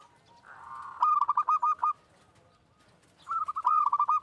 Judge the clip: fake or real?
real